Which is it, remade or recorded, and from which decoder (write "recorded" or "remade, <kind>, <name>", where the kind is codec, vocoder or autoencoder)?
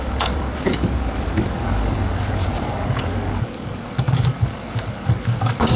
remade, codec, DAC